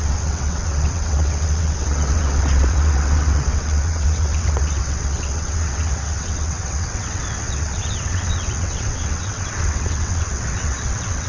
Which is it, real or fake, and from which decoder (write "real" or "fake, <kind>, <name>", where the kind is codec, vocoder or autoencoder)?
fake, vocoder, WaveNeXt